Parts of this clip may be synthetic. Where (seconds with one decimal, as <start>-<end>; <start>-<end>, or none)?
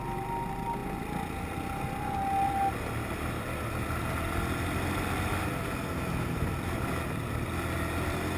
none